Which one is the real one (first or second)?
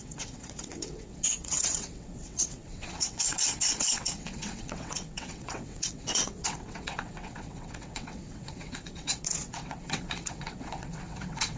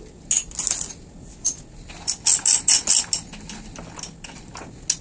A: second